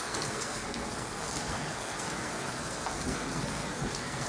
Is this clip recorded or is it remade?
remade